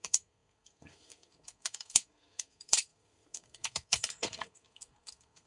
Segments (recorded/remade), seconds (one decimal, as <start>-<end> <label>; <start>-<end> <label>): 0.0-5.5 remade